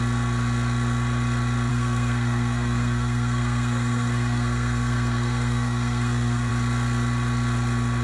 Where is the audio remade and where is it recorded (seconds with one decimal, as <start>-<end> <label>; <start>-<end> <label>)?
0.0-1.7 recorded; 1.7-6.5 remade; 6.5-8.0 recorded